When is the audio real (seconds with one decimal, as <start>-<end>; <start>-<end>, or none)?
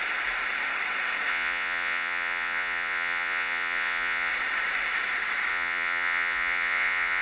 0.0-1.3; 4.3-5.5